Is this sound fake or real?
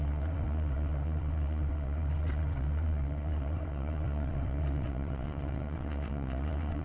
fake